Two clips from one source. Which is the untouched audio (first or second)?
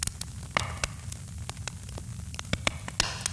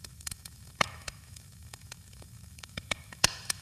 first